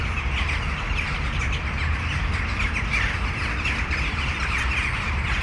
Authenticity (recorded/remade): recorded